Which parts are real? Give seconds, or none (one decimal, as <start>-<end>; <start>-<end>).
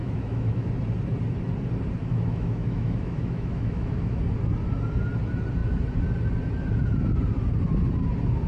0.7-2.0; 4.2-8.5